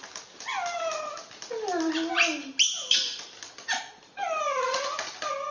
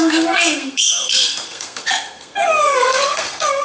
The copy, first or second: second